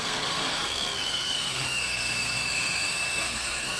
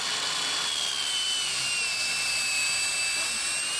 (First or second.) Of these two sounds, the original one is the second